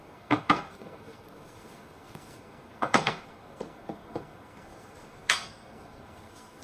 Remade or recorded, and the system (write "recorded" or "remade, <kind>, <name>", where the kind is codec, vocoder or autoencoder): remade, codec, SNAC